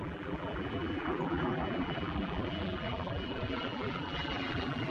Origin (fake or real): fake